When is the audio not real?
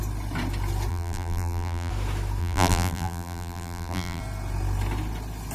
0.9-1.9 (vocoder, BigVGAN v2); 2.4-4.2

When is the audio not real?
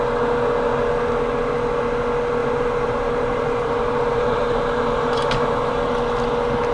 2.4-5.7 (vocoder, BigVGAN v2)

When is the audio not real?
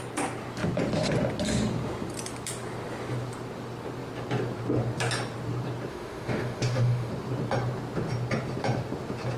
5.9-7.1 (autoencoder, DAC-VAE)